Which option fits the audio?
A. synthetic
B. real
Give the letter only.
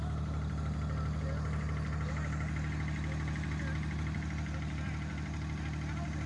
B